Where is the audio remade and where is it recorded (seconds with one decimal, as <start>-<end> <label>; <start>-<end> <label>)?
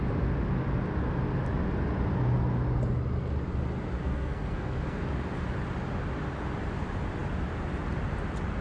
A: 0.0-4.0 recorded; 4.0-5.0 remade; 5.0-8.6 recorded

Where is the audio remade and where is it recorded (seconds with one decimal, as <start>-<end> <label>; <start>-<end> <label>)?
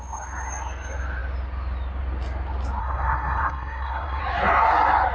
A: 0.0-2.8 recorded; 2.8-4.2 remade; 4.2-5.1 recorded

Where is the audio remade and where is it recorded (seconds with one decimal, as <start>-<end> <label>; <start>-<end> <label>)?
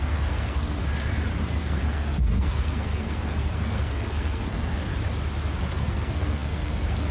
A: 0.0-0.8 remade; 0.8-1.6 recorded; 1.6-4.9 remade; 4.9-5.6 recorded; 5.6-7.1 remade